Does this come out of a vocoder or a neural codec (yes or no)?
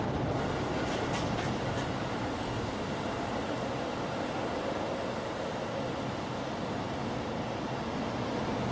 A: no